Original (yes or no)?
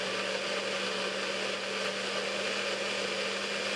yes